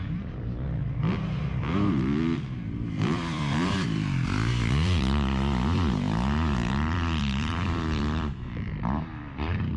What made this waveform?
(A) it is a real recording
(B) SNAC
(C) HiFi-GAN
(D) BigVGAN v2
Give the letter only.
D